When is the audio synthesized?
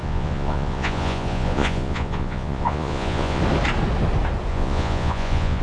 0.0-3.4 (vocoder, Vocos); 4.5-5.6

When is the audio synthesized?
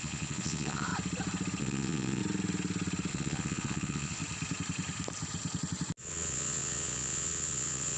0.0-0.9 (vocoder, Vocos); 1.6-2.2; 3.1-4.2; 6.0-8.0